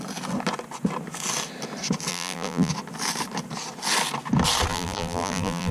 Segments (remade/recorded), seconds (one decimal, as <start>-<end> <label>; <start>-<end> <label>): 0.0-2.1 recorded; 2.1-2.7 remade; 2.7-4.7 recorded; 4.7-5.7 remade

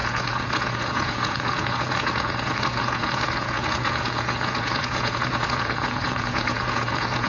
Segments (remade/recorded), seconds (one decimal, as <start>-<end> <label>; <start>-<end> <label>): 0.0-7.3 remade

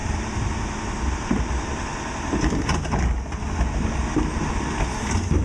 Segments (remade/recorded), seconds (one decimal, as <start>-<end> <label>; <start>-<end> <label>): 0.0-1.9 remade; 1.9-5.4 recorded

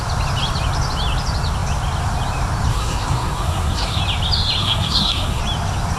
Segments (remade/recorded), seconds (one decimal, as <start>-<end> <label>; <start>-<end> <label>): 0.0-2.7 recorded; 2.7-4.0 remade; 4.0-4.6 recorded; 4.6-5.4 remade; 5.4-6.0 recorded

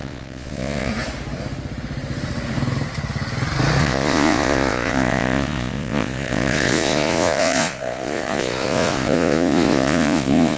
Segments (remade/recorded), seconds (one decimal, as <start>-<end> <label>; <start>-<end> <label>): 0.0-0.9 remade; 0.9-3.8 recorded; 3.8-10.6 remade

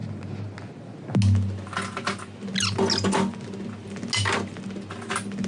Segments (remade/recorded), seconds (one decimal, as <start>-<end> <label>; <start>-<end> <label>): 0.0-5.5 recorded

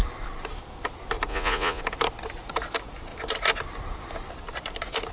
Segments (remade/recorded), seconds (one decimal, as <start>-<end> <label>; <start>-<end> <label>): 0.0-1.3 recorded; 1.3-1.8 remade; 1.8-5.1 recorded

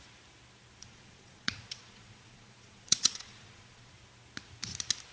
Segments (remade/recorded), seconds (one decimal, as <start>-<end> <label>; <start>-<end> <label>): 0.0-0.8 recorded; 0.8-3.9 remade; 3.9-5.1 recorded